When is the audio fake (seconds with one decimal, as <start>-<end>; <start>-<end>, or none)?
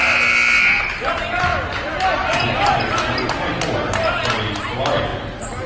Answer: none